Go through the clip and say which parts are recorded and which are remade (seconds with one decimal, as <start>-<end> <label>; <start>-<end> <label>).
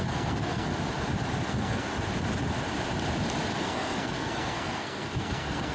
0.0-0.7 remade; 0.7-1.5 recorded; 1.5-1.9 remade; 1.9-3.6 recorded; 3.6-5.7 remade